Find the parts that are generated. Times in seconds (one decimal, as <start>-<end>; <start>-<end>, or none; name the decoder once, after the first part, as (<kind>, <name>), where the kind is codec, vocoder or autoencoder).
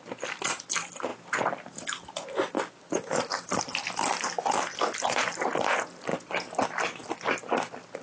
none